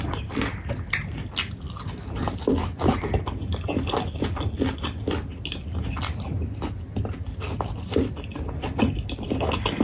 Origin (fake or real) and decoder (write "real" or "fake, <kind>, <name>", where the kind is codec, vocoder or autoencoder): real